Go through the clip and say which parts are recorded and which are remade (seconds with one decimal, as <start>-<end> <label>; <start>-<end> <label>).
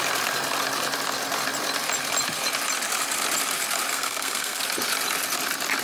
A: 0.0-3.9 recorded; 3.9-4.6 remade; 4.6-5.8 recorded